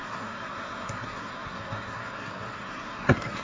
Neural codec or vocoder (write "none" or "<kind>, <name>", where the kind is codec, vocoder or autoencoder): codec, SNAC